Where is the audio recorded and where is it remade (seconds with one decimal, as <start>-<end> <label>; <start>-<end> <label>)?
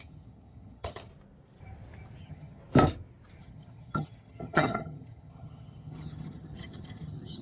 0.0-1.1 remade; 1.1-2.2 recorded; 2.2-2.6 remade; 2.6-3.4 recorded; 3.4-7.4 remade